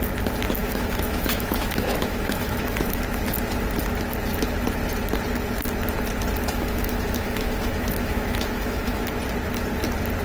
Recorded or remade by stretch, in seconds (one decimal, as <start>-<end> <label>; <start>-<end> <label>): 0.0-0.6 recorded; 0.6-3.0 remade; 3.0-6.4 recorded; 6.4-9.0 remade; 9.0-10.2 recorded